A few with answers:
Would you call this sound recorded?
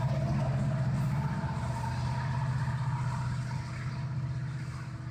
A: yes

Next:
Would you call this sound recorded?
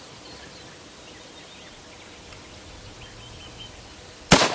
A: yes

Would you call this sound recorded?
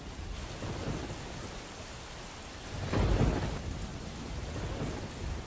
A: yes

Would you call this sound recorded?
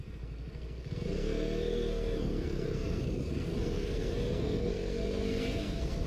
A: no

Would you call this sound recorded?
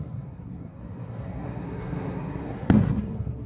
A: no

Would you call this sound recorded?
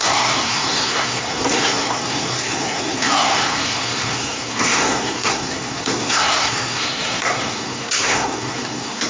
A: no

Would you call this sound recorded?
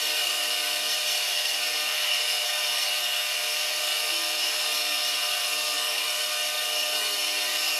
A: no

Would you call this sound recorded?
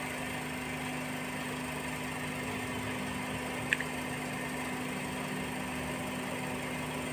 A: yes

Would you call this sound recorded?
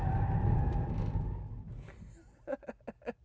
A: yes